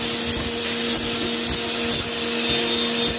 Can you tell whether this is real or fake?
real